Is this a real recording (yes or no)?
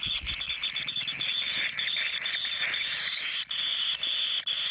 yes